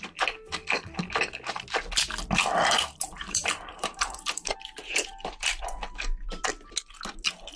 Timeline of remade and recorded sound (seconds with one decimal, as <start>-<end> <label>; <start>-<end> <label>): 0.0-2.6 recorded; 2.6-5.6 remade; 5.6-7.6 recorded